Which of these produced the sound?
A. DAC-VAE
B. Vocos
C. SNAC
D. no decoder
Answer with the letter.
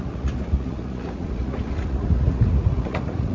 B